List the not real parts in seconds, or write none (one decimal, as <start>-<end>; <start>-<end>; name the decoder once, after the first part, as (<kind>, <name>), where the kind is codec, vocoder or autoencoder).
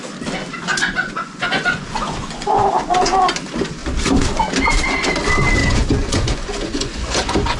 0.7-2.6 (vocoder, Vocos); 5.6-7.6